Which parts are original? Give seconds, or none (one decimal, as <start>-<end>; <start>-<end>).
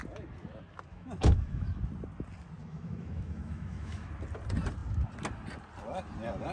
0.0-0.9; 1.8-2.6; 4.1-6.5